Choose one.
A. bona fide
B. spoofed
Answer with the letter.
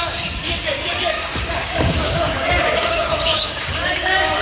B